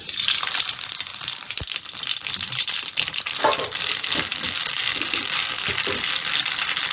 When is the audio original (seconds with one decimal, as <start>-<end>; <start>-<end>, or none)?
0.0-6.9